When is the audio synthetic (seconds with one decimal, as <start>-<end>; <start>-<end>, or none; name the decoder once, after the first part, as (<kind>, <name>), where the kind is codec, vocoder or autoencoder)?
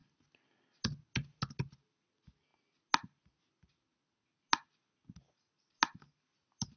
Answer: none